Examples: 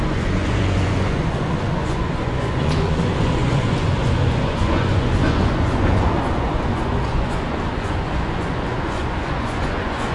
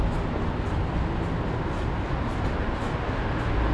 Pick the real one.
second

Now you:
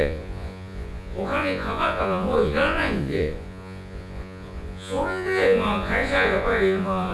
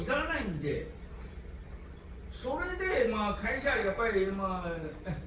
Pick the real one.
second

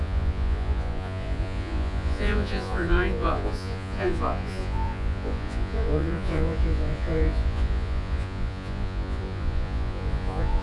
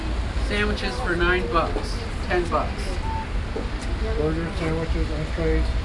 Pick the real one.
second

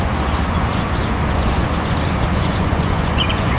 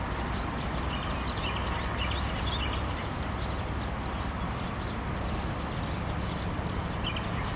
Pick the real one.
second